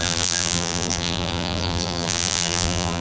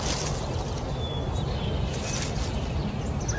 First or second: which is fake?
first